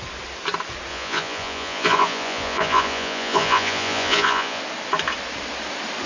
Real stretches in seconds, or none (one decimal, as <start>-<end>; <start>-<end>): 0.0-0.9; 4.6-6.1